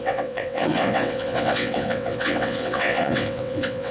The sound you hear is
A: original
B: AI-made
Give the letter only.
B